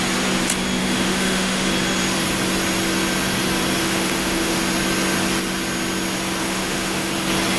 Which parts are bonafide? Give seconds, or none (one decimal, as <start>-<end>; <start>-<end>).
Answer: 0.0-0.8; 1.7-3.8; 4.6-6.4; 7.1-7.6